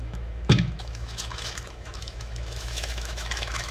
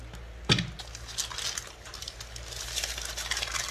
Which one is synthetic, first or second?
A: first